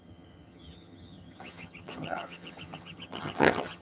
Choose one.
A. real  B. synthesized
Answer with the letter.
B